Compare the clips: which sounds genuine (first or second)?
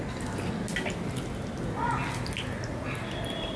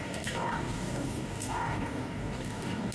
first